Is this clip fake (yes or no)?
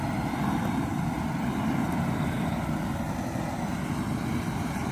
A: no